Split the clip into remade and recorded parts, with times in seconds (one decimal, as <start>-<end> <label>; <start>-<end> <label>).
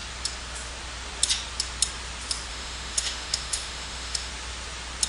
0.0-2.5 recorded; 2.5-4.3 remade; 4.3-5.1 recorded